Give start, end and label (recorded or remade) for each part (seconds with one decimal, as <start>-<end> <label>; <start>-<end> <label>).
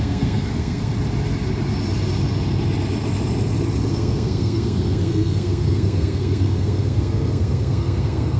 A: 0.0-0.9 remade; 0.9-3.9 recorded; 3.9-8.4 remade